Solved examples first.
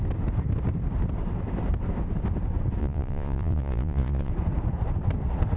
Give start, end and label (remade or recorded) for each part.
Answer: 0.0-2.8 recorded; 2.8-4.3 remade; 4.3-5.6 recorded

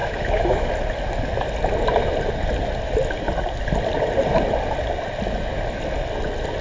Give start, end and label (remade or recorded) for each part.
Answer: 0.0-0.7 remade; 0.7-6.6 recorded

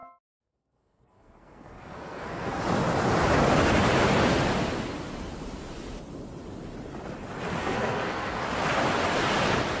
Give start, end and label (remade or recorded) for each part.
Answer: 0.0-2.6 remade; 2.6-7.6 recorded; 7.6-8.4 remade; 8.4-9.8 recorded